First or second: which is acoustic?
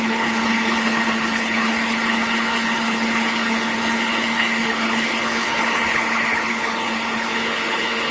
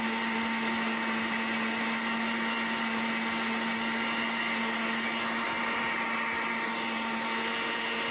second